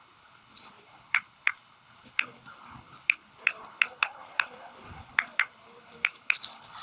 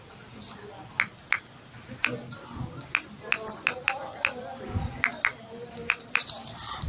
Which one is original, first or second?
second